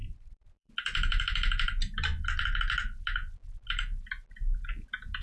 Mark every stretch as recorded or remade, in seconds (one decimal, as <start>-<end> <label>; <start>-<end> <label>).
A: 0.0-0.7 remade; 0.7-5.2 recorded